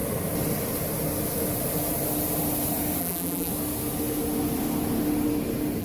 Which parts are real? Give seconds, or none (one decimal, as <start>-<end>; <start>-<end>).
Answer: 0.0-3.0; 3.5-5.8